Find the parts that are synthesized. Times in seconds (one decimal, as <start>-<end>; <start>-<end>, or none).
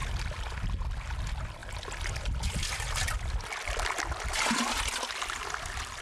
none